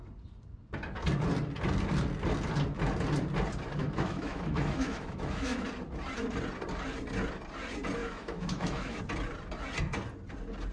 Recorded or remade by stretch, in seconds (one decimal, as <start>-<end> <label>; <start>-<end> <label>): 0.0-3.8 recorded; 3.8-5.6 remade; 5.6-8.0 recorded; 8.0-9.0 remade; 9.0-10.7 recorded